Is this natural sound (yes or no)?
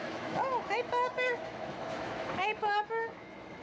no